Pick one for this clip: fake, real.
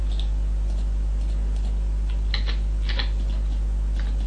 real